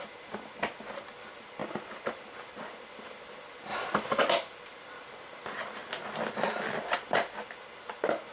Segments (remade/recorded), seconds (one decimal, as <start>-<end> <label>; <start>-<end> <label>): 0.0-1.6 recorded; 1.6-2.3 remade; 2.3-3.7 recorded; 3.7-4.2 remade; 4.2-8.3 recorded